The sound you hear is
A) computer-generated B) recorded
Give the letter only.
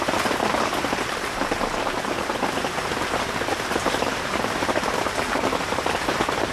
A